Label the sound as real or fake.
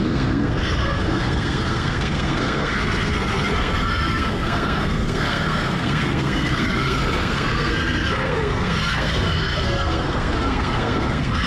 fake